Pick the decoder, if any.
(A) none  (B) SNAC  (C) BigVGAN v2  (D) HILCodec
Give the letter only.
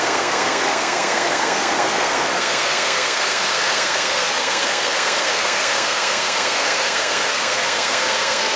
B